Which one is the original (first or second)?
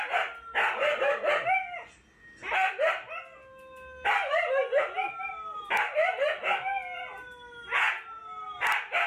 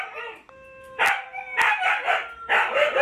first